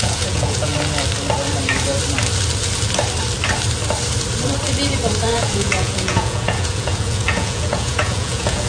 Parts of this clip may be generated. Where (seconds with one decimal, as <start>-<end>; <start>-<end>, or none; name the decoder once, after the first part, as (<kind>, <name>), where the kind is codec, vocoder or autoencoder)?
0.0-0.7 (vocoder, Vocos); 5.3-8.7

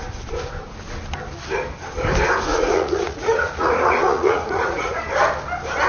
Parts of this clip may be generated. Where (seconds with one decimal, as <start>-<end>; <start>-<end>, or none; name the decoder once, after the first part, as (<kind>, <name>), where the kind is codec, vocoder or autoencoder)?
2.5-5.0 (vocoder, Vocos)

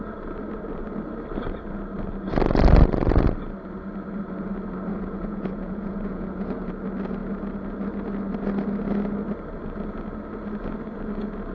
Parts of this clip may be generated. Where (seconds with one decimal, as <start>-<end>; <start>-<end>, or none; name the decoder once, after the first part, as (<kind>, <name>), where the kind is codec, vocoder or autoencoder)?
4.9-6.7 (vocoder, Vocos)

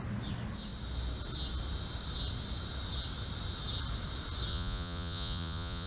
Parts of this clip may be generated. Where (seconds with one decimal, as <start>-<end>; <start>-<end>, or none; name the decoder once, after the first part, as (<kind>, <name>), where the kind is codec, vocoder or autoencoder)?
4.5-5.9 (vocoder, Vocos)